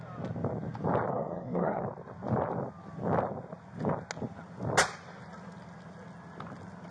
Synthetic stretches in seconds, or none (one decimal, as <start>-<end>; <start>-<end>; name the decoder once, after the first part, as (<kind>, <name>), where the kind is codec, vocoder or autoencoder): 1.1-1.8 (codec, SNAC)